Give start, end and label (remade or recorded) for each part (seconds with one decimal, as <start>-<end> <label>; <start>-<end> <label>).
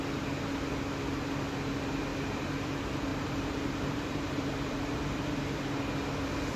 0.0-2.1 recorded; 2.1-2.7 remade; 2.7-3.1 recorded; 3.1-5.7 remade; 5.7-6.6 recorded